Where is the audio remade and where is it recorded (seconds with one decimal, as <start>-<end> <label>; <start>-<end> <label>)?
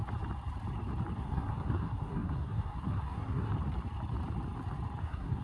0.0-1.2 recorded; 1.2-3.5 remade; 3.5-5.0 recorded; 5.0-5.4 remade